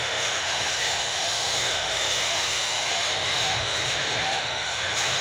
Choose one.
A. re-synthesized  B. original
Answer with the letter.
A